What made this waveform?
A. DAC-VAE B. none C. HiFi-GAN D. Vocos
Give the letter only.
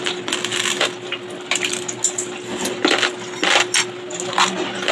B